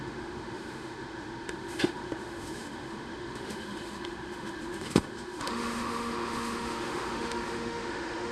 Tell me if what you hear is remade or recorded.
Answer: remade